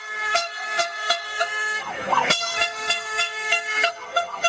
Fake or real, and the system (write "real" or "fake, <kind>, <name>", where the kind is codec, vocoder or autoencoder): fake, codec, SNAC